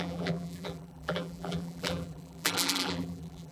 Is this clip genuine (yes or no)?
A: no